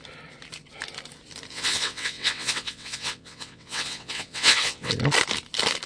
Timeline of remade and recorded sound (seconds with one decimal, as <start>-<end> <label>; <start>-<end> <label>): 0.0-1.5 recorded; 1.5-4.9 remade; 4.9-5.9 recorded

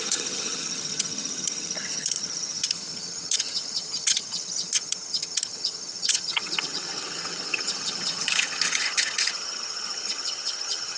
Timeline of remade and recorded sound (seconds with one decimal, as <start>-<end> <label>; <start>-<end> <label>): 0.0-11.0 remade

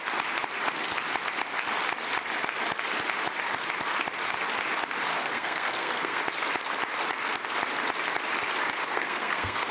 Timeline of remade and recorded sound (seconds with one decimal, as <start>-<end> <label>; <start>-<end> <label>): 0.0-5.1 recorded; 5.1-6.2 remade; 6.2-8.9 recorded; 8.9-9.7 remade

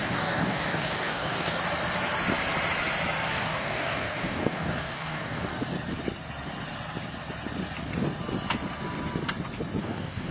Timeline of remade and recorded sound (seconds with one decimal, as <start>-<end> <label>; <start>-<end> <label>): 0.0-1.6 remade; 1.6-3.3 recorded; 3.3-5.5 remade; 5.5-9.8 recorded; 9.8-10.3 remade

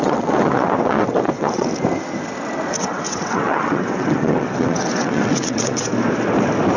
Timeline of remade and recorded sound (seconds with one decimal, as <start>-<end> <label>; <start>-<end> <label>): 0.0-1.7 remade; 1.7-2.8 recorded; 2.8-5.9 remade; 5.9-6.8 recorded

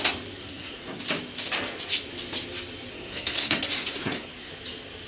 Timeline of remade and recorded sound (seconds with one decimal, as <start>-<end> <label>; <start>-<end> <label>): 0.0-0.4 recorded; 0.4-1.0 remade; 1.0-2.9 recorded; 2.9-4.5 remade; 4.5-5.1 recorded